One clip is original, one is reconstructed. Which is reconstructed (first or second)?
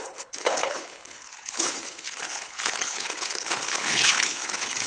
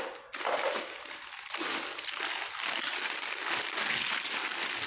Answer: first